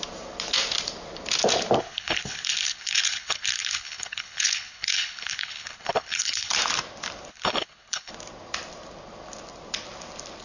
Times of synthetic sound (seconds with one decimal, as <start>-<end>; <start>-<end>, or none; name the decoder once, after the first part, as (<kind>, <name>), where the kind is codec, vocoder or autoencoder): 1.8-6.5 (codec, HILCodec); 7.3-8.1